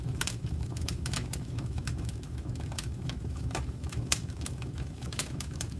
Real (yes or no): no